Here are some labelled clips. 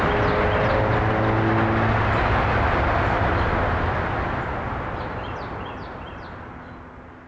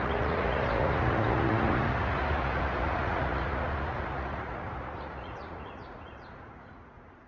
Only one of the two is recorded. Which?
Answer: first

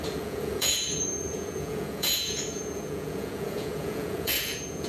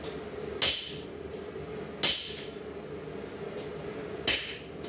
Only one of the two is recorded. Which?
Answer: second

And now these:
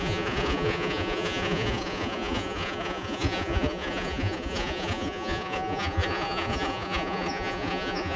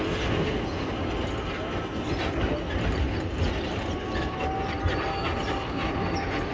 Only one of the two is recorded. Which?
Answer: second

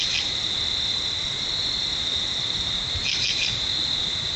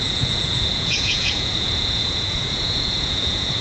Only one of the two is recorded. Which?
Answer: first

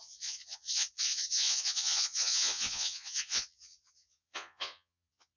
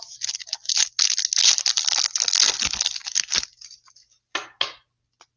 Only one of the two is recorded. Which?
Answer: second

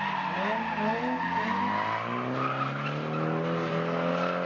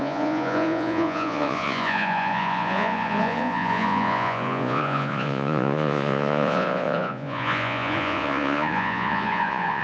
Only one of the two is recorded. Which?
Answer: first